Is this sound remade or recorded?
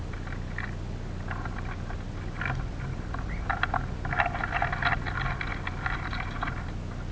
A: recorded